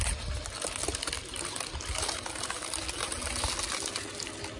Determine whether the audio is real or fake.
real